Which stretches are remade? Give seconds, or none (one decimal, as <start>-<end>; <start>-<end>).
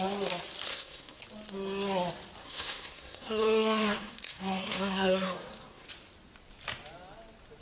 0.7-1.2; 2.4-5.9